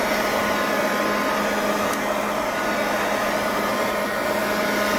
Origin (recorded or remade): recorded